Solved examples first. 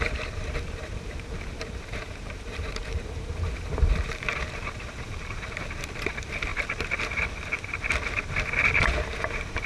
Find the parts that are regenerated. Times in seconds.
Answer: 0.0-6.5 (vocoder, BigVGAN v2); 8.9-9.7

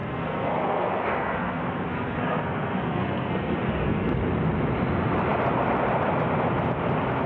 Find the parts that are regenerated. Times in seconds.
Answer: 0.0-4.2 (codec, SNAC)

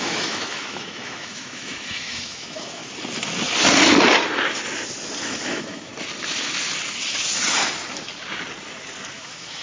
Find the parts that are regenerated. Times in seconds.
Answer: 0.0-2.8 (autoencoder, DAC-VAE); 5.2-5.9; 9.1-9.6

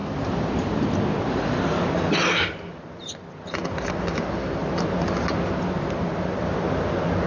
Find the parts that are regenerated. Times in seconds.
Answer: none

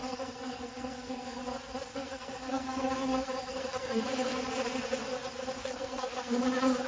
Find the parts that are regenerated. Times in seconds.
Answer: 0.0-1.4 (codec, SNAC); 1.9-4.4; 5.6-6.4

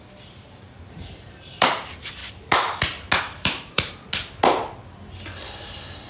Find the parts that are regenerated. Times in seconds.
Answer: 0.0-2.2 (vocoder, BigVGAN v2); 3.2-4.0

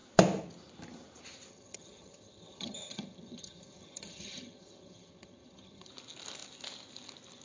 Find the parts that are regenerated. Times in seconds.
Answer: 1.5-5.9 (vocoder, HiFi-GAN)